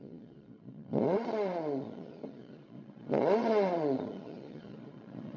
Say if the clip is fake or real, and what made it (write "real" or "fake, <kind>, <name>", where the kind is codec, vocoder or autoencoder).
fake, vocoder, Vocos